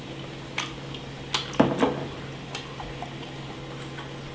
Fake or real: real